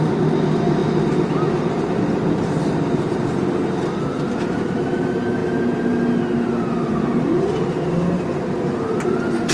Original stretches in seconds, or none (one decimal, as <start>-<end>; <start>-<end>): 0.0-9.5

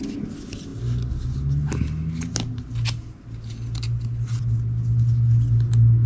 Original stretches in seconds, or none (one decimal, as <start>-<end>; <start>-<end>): 0.0-6.1

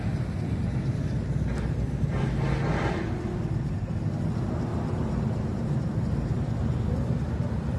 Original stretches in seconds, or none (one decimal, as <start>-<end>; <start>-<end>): 0.0-4.7; 6.5-7.8

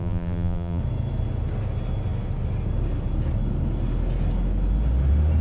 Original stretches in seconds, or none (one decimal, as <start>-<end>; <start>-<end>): 0.8-5.4

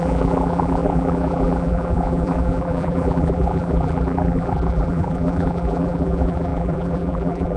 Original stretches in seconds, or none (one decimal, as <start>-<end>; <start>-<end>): none

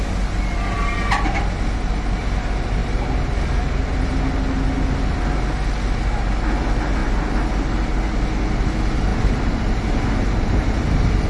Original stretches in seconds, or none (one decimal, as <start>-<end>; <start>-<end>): 0.0-11.3